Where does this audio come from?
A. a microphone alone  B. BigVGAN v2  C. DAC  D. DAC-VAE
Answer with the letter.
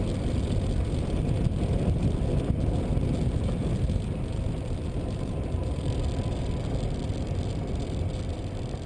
A